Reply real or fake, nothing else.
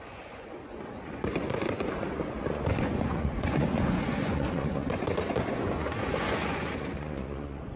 fake